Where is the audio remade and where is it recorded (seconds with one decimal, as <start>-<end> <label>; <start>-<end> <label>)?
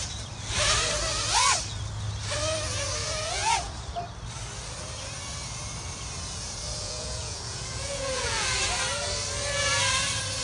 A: 0.0-3.0 recorded; 3.0-4.0 remade; 4.0-6.8 recorded; 6.8-8.6 remade; 8.6-10.4 recorded